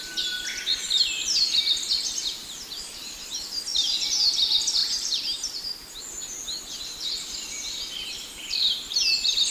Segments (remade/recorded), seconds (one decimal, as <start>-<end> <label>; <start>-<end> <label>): 0.0-2.4 recorded; 2.4-3.3 remade; 3.3-4.8 recorded; 4.8-6.0 remade; 6.0-9.5 recorded